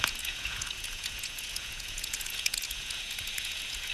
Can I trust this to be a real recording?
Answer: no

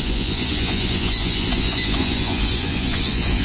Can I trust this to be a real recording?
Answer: no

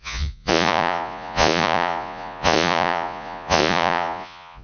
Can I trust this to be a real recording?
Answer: no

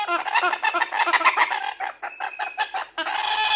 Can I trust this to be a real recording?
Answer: yes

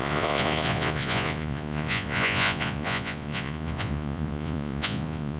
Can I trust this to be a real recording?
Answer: no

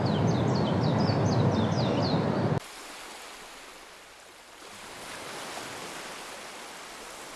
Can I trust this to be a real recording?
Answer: yes